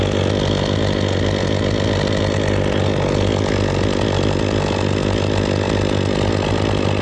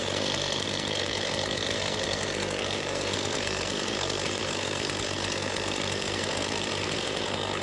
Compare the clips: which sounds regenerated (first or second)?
second